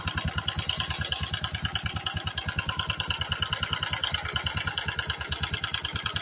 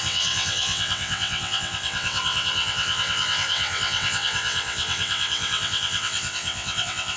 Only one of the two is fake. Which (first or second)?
second